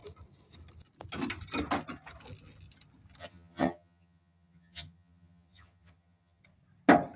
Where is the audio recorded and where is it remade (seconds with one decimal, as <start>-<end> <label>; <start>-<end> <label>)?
0.0-3.2 recorded; 3.2-6.4 remade; 6.4-7.2 recorded